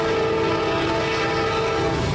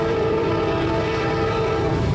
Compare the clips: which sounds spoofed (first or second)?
second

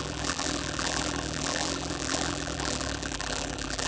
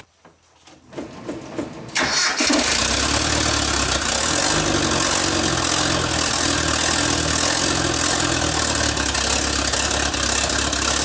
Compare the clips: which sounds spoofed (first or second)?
first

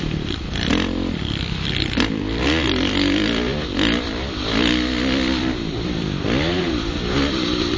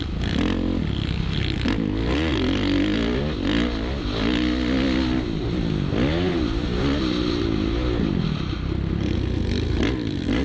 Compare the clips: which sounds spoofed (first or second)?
first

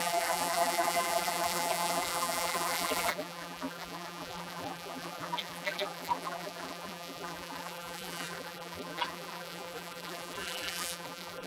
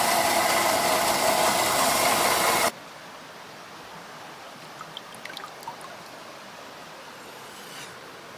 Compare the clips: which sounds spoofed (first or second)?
first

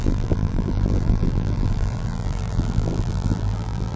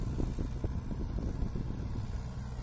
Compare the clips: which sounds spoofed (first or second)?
first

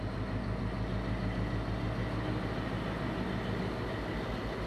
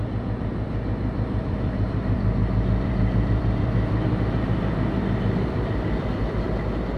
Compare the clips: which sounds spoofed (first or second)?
second